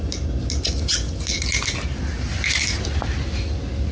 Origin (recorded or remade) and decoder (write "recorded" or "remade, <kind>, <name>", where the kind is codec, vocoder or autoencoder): recorded